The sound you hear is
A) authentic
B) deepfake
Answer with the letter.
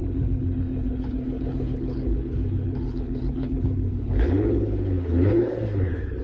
B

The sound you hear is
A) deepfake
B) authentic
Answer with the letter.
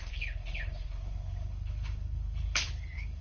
A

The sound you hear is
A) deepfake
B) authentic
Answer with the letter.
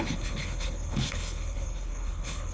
A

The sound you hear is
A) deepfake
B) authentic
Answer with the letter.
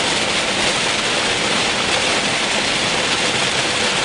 B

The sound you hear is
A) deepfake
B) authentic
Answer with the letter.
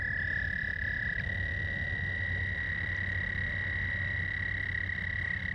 B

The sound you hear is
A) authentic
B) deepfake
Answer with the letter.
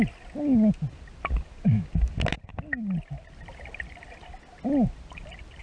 A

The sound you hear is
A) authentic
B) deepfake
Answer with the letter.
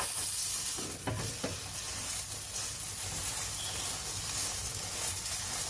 A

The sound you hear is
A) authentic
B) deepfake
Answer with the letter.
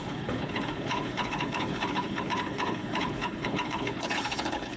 B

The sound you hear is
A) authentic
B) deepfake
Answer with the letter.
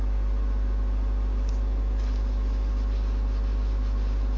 A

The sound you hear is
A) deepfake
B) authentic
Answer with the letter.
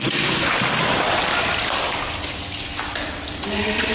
B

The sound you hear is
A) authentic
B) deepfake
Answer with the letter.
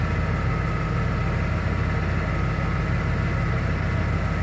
A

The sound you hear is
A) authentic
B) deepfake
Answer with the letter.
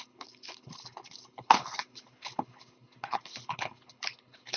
B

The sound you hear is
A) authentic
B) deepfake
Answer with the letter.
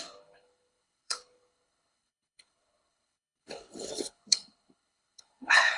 B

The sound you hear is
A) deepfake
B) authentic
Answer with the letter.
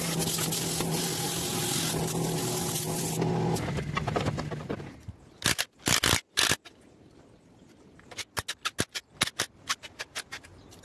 B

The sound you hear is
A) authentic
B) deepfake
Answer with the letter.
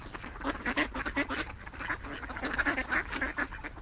A